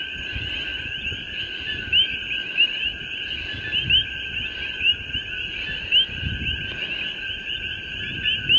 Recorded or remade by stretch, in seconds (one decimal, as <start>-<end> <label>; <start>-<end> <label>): 0.0-8.6 recorded